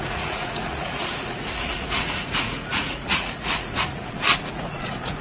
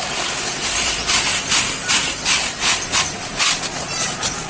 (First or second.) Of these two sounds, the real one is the second